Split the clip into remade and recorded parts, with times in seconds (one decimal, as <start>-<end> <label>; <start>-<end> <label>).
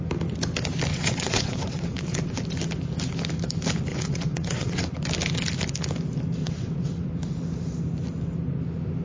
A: 0.0-0.9 recorded; 0.9-2.4 remade; 2.4-3.9 recorded; 3.9-5.0 remade; 5.0-6.4 recorded; 6.4-7.1 remade; 7.1-9.0 recorded